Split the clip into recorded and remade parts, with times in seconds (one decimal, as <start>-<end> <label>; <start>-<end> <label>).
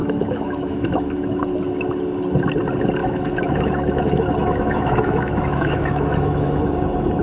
0.0-1.4 remade; 1.4-3.0 recorded; 3.0-6.6 remade; 6.6-7.2 recorded